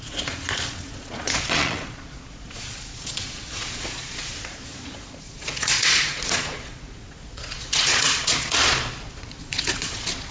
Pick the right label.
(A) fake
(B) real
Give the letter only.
A